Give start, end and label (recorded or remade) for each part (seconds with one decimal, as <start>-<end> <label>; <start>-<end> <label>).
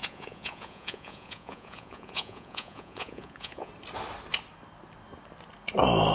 0.0-3.7 remade; 3.7-6.1 recorded